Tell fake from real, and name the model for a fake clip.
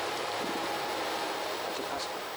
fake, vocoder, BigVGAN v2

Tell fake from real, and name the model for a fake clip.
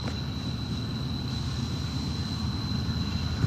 real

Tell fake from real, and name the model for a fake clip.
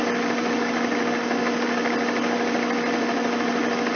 real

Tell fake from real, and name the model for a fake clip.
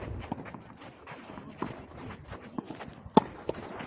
real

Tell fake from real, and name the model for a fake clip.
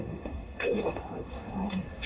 fake, codec, SNAC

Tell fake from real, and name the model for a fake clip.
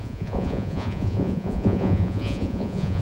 fake, vocoder, Vocos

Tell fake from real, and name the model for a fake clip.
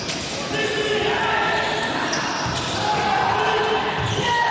real